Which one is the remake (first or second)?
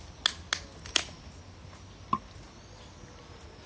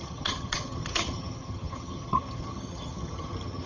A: second